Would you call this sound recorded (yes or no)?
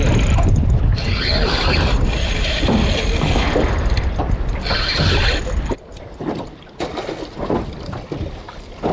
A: yes